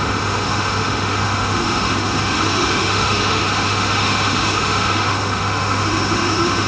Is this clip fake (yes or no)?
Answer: yes